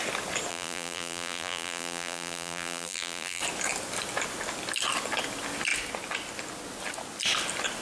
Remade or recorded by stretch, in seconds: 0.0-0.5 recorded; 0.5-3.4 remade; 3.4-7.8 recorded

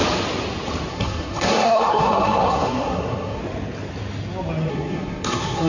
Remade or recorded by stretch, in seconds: 0.0-0.9 recorded; 0.9-3.4 remade; 3.4-4.7 recorded; 4.7-5.7 remade

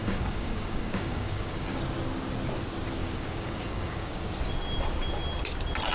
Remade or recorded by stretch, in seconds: 0.0-1.8 remade; 1.8-3.0 recorded; 3.0-4.1 remade; 4.1-5.9 recorded

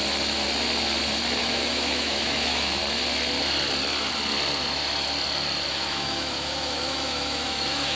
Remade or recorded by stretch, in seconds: 0.0-1.4 recorded; 1.4-2.8 remade; 2.8-5.7 recorded; 5.7-8.0 remade

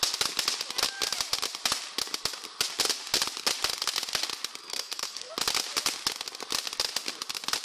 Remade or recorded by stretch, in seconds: 0.0-4.6 recorded; 4.6-5.3 remade; 5.3-7.6 recorded